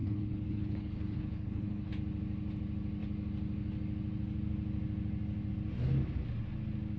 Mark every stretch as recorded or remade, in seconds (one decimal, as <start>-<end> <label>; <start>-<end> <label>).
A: 0.0-1.9 remade; 1.9-7.0 recorded